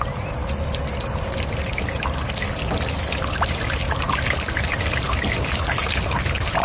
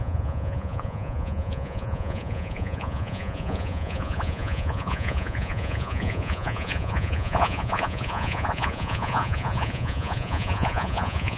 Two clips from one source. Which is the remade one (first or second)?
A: second